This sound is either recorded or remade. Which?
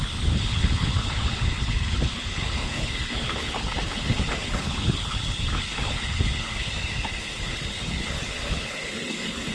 remade